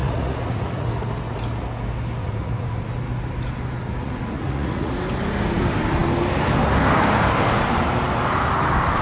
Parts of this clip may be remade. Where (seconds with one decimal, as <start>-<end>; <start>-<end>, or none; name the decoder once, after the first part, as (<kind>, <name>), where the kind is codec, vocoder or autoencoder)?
0.0-0.9 (vocoder, Vocos); 2.2-2.9; 4.0-4.9